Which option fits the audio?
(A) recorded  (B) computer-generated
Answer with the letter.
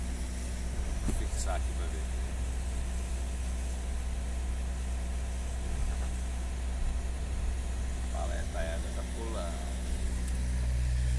A